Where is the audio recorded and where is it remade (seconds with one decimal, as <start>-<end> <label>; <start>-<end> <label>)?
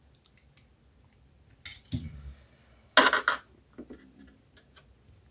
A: 0.0-5.3 recorded